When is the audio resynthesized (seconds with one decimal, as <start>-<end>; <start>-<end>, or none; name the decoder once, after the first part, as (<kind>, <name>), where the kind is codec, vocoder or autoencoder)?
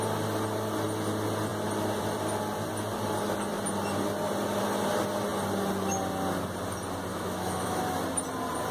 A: 7.1-7.8 (autoencoder, DAC-VAE)